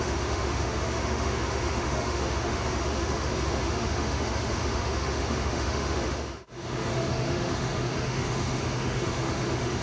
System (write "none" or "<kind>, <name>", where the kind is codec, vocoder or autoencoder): autoencoder, DAC-VAE